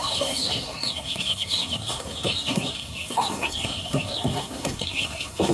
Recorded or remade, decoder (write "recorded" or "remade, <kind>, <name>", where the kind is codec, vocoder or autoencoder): remade, codec, SNAC